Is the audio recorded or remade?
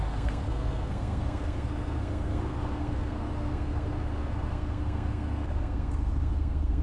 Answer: remade